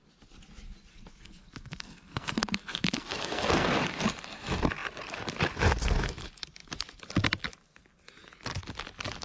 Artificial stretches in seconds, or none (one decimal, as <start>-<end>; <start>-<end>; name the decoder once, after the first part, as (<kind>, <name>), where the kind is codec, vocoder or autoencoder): 0.9-3.7 (codec, SNAC)